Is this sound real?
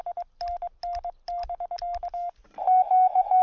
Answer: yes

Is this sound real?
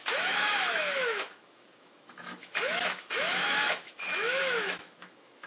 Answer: no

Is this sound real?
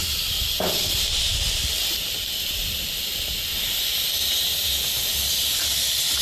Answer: yes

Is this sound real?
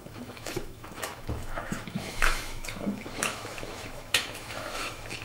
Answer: no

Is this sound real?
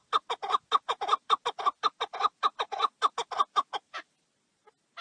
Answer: yes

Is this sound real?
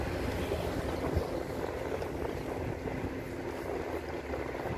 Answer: yes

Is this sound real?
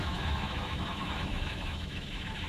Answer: no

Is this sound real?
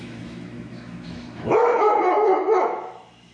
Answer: no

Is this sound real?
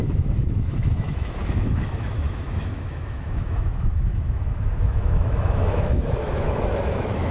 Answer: no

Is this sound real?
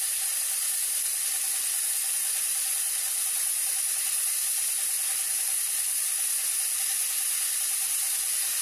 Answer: yes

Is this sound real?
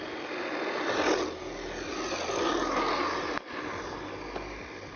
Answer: yes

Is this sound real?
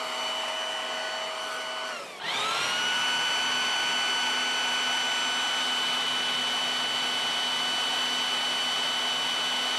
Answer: yes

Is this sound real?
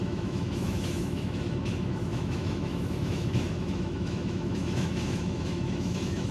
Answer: no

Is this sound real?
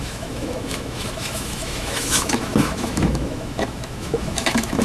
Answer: no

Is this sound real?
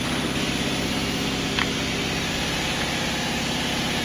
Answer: yes